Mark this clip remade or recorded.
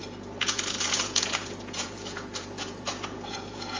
remade